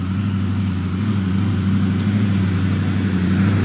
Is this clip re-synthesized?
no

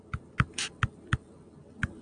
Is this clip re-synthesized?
no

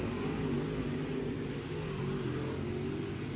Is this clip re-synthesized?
no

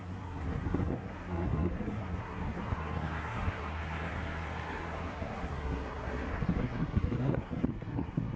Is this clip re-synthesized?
yes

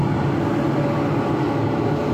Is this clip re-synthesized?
no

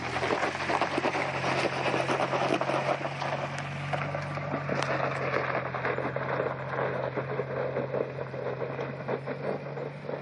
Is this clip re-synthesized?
no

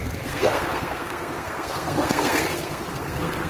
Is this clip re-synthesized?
yes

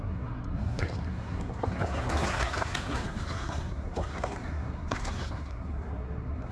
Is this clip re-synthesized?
yes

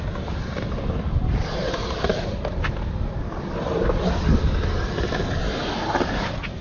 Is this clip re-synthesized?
no